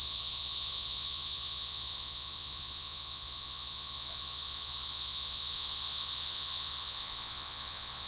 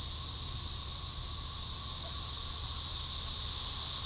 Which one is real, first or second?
second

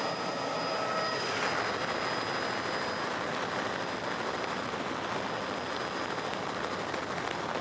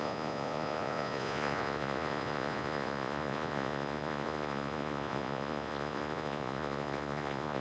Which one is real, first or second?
first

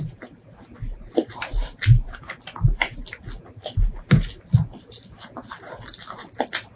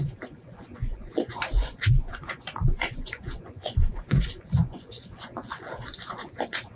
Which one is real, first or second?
first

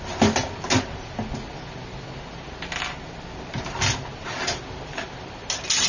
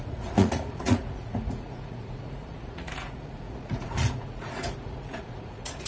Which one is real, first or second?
first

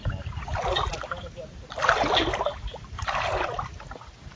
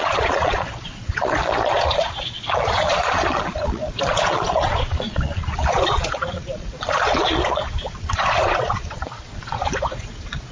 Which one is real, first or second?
first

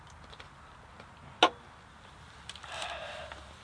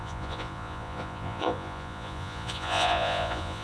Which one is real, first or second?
first